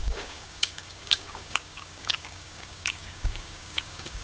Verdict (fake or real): fake